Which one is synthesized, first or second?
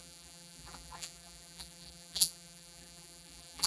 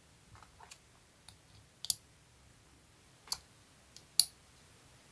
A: first